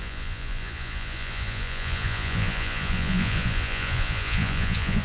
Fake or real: fake